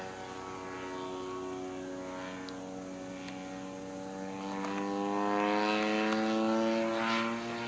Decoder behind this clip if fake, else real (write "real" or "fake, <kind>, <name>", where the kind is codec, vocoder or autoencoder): real